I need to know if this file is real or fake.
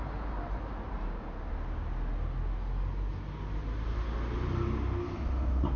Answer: real